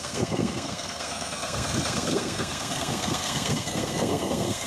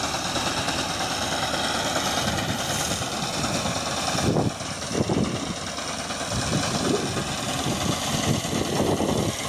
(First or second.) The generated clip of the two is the first